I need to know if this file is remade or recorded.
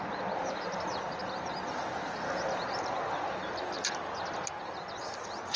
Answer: recorded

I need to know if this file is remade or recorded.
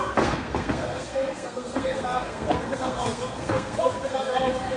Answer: remade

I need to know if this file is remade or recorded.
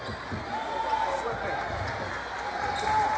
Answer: recorded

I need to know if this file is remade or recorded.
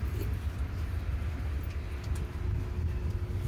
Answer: recorded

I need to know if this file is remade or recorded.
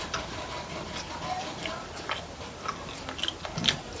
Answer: recorded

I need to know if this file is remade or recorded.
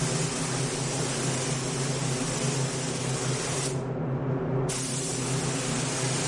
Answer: recorded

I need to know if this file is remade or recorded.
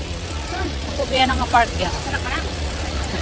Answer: remade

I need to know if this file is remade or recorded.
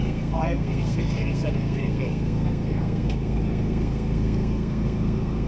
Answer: remade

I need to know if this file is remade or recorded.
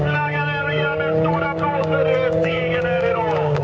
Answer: remade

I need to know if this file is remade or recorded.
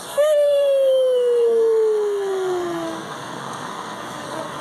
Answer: remade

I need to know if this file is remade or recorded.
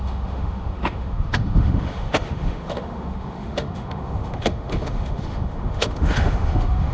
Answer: remade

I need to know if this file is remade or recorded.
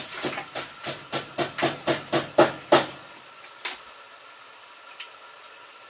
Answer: recorded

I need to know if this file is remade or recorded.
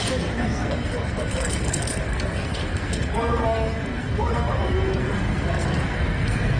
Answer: remade